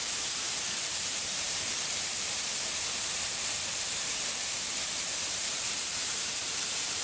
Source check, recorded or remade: remade